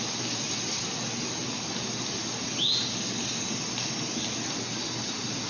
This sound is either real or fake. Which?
real